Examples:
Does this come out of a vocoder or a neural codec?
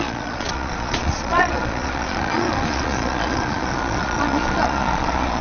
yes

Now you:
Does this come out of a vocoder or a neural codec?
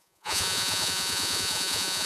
yes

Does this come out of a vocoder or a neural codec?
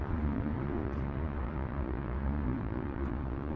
yes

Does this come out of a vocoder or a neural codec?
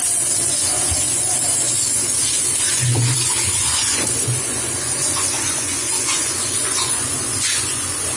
yes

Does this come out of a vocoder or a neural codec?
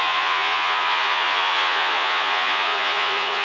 yes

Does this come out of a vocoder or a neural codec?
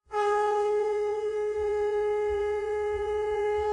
yes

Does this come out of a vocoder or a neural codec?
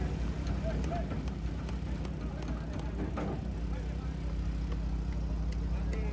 no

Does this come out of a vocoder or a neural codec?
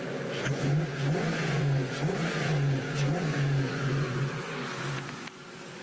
yes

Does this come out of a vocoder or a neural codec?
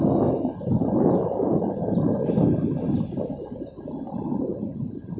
no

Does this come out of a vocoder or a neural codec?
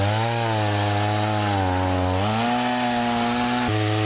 no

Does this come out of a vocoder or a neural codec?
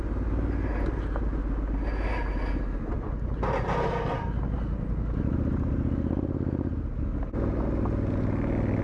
no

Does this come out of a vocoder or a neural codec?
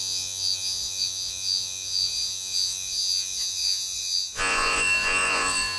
yes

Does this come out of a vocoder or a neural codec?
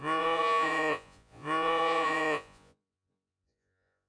yes